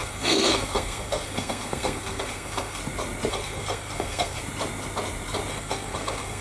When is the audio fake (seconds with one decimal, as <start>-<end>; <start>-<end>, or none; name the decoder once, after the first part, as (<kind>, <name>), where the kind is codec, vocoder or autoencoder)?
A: 0.0-2.8 (codec, SNAC); 3.3-4.4; 5.5-6.4